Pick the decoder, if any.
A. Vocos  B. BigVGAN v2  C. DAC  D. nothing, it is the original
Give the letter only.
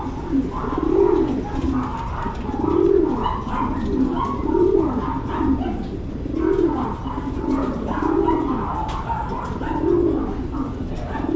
D